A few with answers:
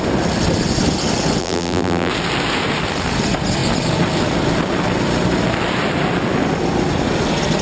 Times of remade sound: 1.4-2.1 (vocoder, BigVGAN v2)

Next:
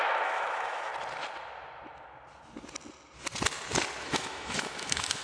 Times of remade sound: 0.0-0.9 (autoencoder, DAC-VAE); 4.0-5.2